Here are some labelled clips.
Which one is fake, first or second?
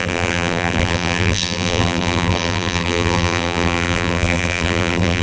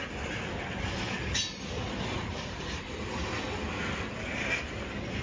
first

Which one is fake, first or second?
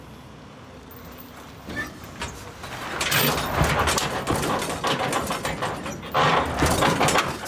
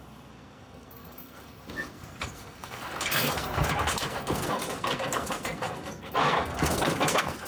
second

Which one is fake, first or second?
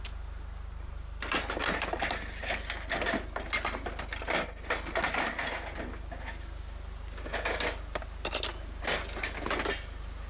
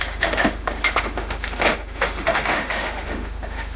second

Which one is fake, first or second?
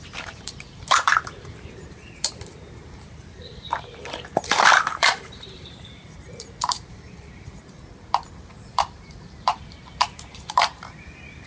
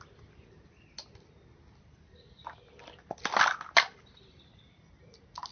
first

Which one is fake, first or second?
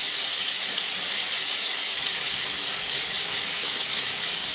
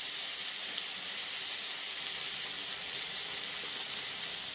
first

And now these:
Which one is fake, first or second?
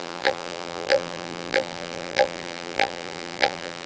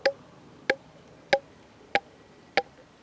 first